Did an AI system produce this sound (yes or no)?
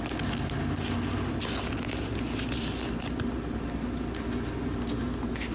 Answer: no